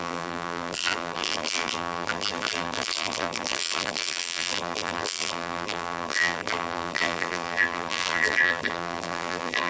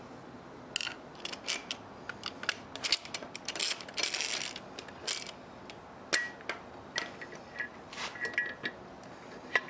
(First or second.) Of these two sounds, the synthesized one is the first